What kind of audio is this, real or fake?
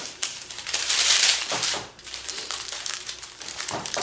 fake